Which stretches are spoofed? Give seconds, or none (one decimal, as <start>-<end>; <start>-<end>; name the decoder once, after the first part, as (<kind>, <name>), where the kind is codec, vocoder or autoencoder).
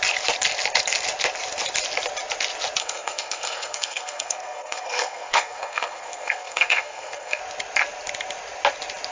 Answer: 2.8-7.4 (codec, SNAC)